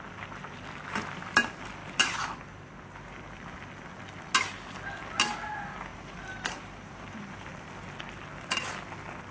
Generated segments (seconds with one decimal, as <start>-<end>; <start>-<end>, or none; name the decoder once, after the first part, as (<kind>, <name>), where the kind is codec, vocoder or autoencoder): 5.9-7.7 (vocoder, BigVGAN v2)